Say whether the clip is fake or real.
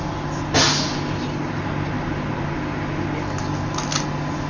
real